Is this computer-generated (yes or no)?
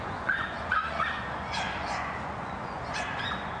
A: yes